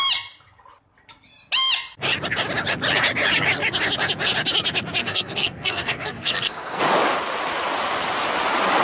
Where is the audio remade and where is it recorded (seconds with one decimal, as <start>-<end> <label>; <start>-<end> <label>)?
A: 0.0-5.0 recorded; 5.0-6.8 remade; 6.8-8.8 recorded